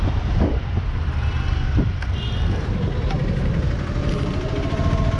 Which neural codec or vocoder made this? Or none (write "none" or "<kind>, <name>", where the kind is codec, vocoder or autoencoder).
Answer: none